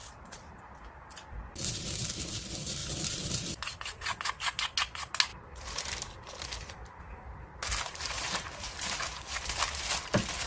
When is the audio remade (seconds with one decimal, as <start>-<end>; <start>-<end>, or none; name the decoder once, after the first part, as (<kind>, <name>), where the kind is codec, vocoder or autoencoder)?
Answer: 0.0-0.6 (vocoder, BigVGAN v2); 2.8-3.4; 5.3-9.4